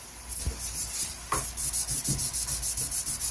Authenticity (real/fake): real